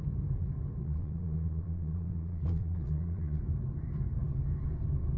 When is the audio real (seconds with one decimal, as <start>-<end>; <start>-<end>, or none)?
0.0-0.8; 3.4-5.2